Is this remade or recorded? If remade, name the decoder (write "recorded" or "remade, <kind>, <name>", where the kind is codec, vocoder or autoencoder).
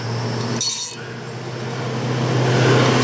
recorded